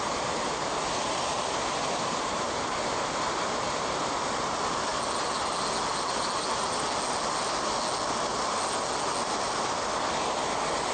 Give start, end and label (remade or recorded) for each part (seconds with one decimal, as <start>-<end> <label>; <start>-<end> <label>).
0.0-10.9 recorded